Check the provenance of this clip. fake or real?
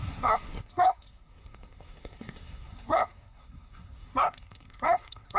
fake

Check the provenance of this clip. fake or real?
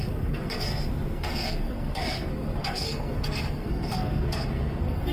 fake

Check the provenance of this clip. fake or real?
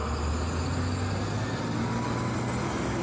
real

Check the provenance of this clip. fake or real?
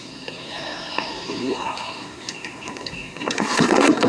fake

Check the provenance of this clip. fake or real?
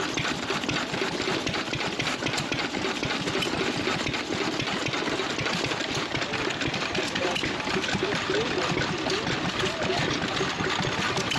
real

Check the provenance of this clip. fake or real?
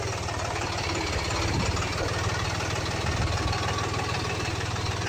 real